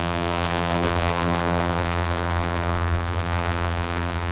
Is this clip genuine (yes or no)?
no